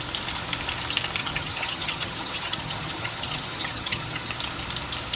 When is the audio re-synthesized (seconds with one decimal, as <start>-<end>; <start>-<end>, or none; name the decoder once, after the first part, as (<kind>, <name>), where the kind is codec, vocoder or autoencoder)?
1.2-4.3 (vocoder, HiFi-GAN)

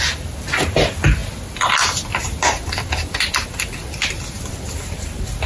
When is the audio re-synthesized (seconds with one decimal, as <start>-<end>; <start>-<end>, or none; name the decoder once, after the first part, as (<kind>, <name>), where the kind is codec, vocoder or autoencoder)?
none

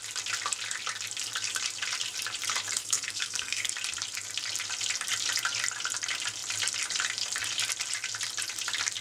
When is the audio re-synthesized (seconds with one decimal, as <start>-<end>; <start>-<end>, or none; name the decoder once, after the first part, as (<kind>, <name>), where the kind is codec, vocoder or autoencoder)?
2.8-3.7 (codec, SNAC)

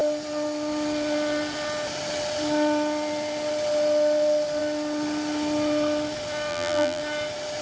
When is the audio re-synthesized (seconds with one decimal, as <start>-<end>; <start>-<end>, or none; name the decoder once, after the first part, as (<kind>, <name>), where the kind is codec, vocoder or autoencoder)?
6.5-7.0 (vocoder, BigVGAN v2)

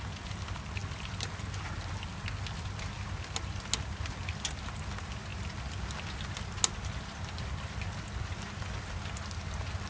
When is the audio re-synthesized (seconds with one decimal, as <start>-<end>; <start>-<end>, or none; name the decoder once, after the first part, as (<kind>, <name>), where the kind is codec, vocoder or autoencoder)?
none

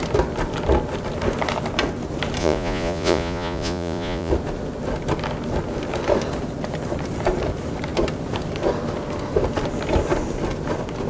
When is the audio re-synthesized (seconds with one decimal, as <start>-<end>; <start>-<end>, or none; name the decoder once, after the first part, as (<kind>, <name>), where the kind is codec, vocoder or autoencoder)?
2.4-4.3 (vocoder, Vocos)

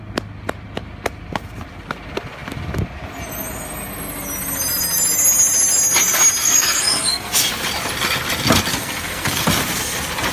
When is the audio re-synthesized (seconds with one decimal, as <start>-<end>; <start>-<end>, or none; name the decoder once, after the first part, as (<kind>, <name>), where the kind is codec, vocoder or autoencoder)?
6.4-7.3 (codec, SNAC); 8.7-9.5